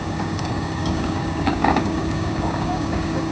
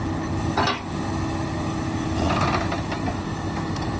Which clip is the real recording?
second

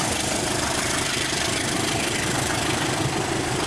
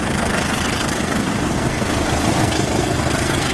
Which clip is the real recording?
first